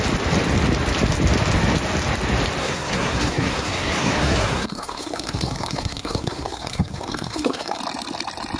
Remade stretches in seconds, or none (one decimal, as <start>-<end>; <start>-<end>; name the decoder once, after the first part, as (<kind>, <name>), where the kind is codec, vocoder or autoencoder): 2.6-7.8 (codec, SNAC)